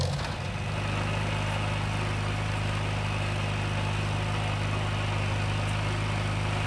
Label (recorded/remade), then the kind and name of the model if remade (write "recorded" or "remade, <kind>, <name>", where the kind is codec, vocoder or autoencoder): recorded